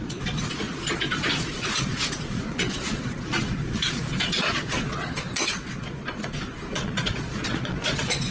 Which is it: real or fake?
fake